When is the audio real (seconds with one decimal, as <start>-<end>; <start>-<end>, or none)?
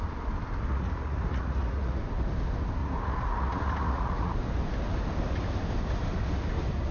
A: 0.0-0.7; 2.0-2.8; 4.3-6.9